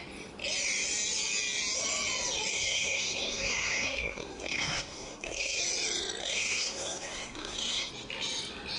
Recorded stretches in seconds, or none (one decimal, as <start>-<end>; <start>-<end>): 0.0-2.5; 5.6-6.2; 7.9-8.8